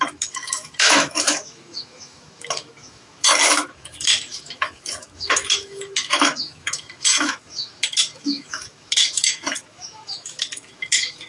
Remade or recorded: remade